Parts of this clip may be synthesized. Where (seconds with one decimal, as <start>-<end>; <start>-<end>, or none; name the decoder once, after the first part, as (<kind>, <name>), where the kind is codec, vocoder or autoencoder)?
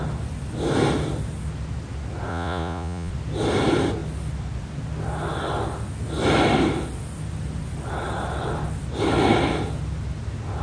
2.3-3.1 (vocoder, Vocos)